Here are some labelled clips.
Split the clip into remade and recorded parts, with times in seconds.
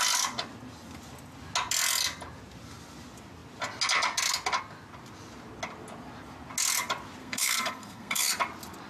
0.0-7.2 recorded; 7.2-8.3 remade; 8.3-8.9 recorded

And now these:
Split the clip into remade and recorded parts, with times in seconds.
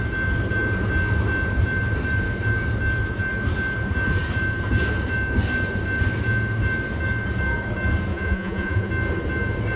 0.0-8.1 recorded; 8.1-8.9 remade; 8.9-9.8 recorded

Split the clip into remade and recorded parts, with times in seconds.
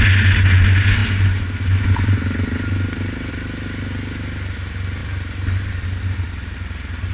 0.0-7.1 recorded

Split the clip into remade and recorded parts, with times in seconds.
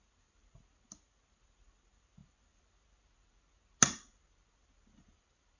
0.0-5.6 recorded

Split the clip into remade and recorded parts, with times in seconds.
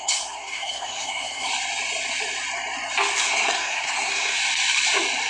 0.0-1.5 remade; 1.5-3.2 recorded; 3.2-4.4 remade; 4.4-5.3 recorded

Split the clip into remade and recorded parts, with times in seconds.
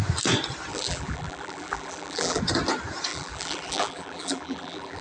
0.0-0.7 recorded; 0.7-2.4 remade; 2.4-3.1 recorded; 3.1-5.0 remade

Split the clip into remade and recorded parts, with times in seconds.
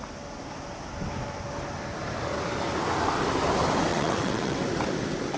0.0-3.9 recorded; 3.9-4.6 remade; 4.6-5.4 recorded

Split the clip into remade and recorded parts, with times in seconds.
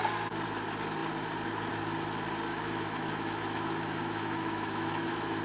0.0-2.5 recorded; 2.5-5.4 remade